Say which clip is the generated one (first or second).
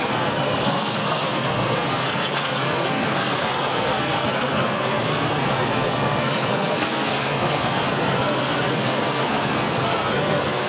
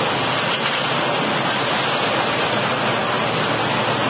first